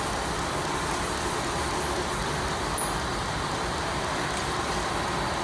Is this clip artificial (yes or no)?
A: no